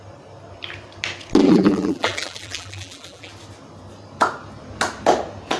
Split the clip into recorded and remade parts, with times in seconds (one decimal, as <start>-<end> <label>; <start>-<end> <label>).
0.0-1.4 recorded; 1.4-3.3 remade; 3.3-5.6 recorded

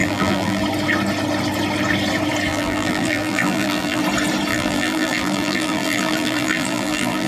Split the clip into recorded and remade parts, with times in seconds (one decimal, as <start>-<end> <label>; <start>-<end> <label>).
0.0-0.6 remade; 0.6-2.5 recorded; 2.5-4.0 remade; 4.0-4.5 recorded; 4.5-7.3 remade

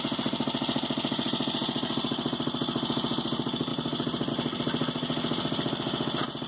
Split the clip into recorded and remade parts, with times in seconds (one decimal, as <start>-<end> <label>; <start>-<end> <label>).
0.0-3.7 recorded; 3.7-4.3 remade; 4.3-6.5 recorded

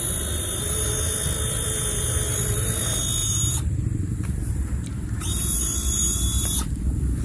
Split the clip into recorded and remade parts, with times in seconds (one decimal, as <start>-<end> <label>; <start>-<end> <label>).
0.0-3.2 recorded; 3.2-5.6 remade; 5.6-6.0 recorded; 6.0-7.2 remade

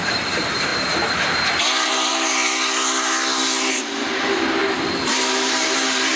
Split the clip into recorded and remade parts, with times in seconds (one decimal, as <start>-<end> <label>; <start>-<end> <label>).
0.0-2.1 remade; 2.1-3.7 recorded; 3.7-6.2 remade